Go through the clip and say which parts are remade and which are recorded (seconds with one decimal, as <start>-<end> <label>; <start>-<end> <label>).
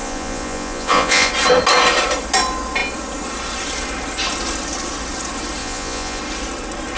0.0-1.3 remade; 1.3-5.6 recorded; 5.6-6.2 remade; 6.2-7.0 recorded